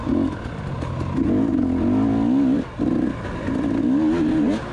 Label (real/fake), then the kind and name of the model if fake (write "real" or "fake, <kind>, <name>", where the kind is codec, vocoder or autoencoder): real